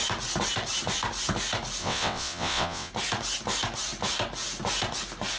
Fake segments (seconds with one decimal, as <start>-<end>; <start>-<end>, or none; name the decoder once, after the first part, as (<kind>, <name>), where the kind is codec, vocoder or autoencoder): 1.8-2.9 (vocoder, WaveNeXt)

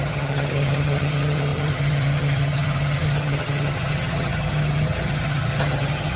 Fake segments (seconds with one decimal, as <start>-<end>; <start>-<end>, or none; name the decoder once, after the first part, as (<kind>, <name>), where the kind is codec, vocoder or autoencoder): 0.0-6.2 (vocoder, HiFi-GAN)